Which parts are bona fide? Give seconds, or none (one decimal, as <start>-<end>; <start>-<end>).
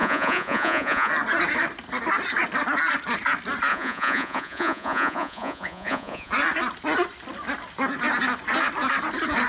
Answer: 1.1-3.7; 6.3-9.5